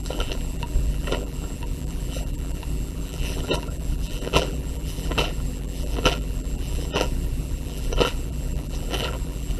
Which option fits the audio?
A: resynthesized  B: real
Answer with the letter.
A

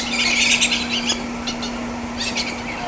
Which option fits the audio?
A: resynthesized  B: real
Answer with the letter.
B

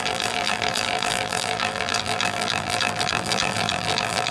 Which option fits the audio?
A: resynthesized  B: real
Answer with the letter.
A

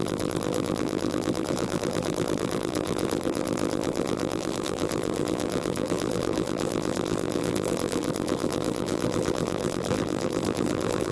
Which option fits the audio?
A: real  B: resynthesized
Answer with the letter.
B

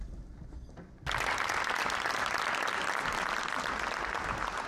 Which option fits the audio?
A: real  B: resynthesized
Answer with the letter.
A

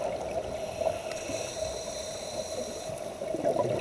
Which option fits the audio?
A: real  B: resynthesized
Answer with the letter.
A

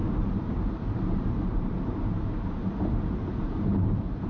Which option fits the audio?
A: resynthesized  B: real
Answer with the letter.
A